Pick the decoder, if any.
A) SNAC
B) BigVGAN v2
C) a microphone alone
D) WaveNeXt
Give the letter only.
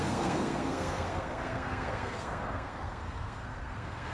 A